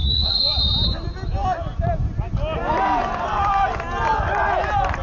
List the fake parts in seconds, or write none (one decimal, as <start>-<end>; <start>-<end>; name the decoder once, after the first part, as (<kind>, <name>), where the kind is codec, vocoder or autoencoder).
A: 0.0-0.7 (vocoder, Vocos)